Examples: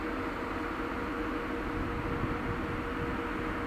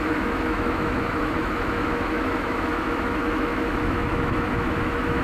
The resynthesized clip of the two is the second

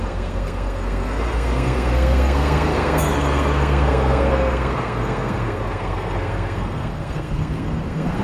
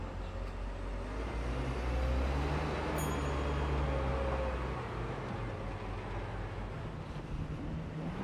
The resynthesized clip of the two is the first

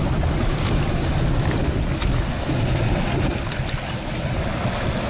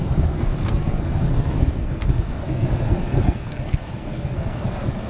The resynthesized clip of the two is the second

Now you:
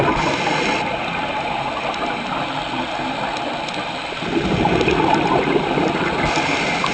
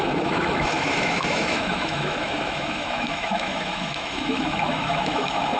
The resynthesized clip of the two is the second